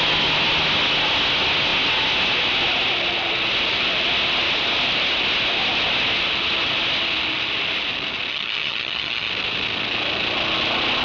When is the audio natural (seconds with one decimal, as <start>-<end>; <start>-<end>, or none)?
0.0-8.3; 9.3-11.0